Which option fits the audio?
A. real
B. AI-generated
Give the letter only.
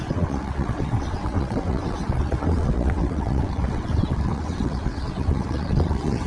B